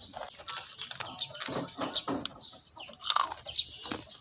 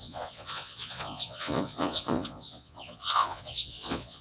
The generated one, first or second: second